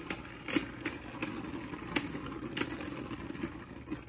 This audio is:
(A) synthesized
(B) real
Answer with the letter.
B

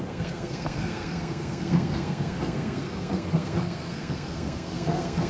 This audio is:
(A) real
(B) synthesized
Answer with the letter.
B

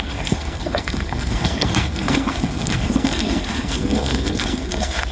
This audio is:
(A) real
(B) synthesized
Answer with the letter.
B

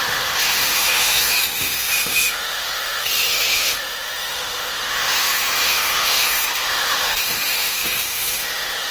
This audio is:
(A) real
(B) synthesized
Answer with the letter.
B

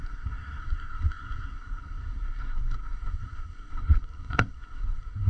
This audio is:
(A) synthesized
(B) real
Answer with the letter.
A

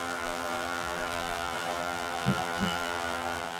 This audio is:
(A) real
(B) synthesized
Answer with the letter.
B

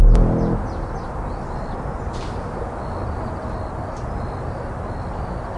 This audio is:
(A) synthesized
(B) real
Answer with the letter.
B